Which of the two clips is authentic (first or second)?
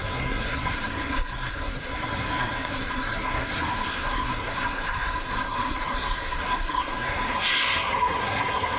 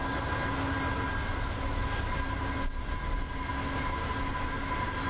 second